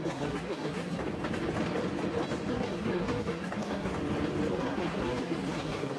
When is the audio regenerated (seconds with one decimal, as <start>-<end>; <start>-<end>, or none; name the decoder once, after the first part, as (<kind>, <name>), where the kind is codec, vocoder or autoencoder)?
0.0-1.0 (codec, SNAC); 2.5-3.9; 4.5-6.0